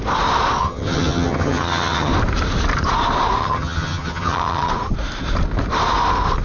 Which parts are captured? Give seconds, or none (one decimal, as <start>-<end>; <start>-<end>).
0.0-0.6; 2.1-3.4; 4.7-6.4